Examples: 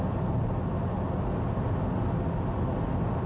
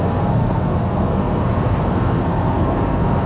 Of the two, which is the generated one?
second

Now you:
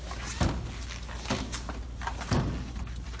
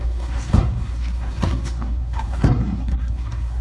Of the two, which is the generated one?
second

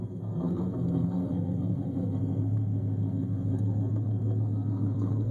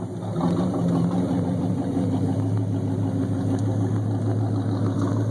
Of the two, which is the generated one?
first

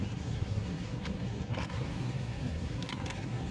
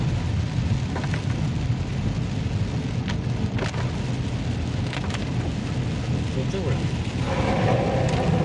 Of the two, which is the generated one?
first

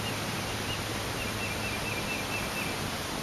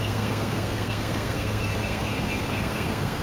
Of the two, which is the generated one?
second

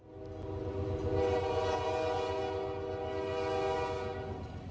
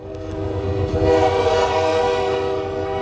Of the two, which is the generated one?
second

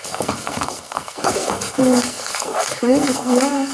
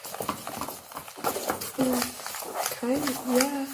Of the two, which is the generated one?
first